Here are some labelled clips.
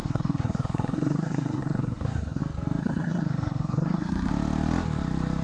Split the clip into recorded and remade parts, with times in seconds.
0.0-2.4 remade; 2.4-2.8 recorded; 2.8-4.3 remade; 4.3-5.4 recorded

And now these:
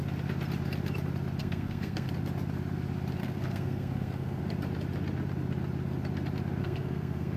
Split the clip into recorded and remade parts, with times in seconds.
0.0-1.4 recorded; 1.4-2.1 remade; 2.1-3.2 recorded; 3.2-4.4 remade; 4.4-6.6 recorded; 6.6-7.4 remade

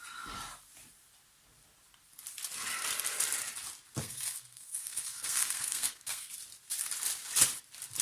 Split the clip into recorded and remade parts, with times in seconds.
0.0-4.0 recorded; 4.0-6.3 remade; 6.3-8.0 recorded

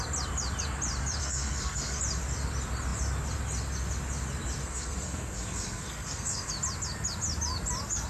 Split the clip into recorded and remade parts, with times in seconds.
0.0-1.2 recorded; 1.2-2.0 remade; 2.0-4.6 recorded; 4.6-6.5 remade; 6.5-8.1 recorded